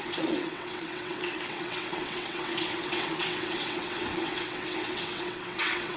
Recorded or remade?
remade